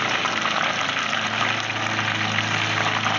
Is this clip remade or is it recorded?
recorded